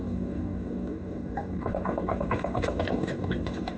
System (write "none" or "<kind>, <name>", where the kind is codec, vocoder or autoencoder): codec, DAC